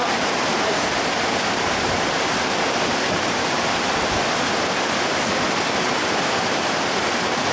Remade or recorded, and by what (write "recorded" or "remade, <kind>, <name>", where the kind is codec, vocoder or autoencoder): recorded